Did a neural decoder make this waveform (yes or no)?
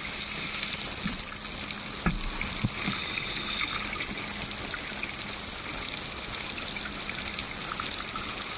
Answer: no